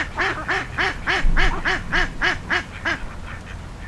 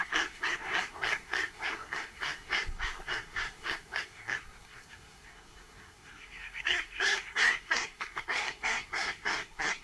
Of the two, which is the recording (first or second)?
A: first